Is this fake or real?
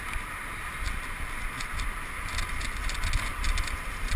real